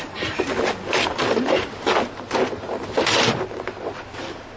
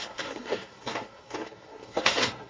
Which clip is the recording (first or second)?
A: first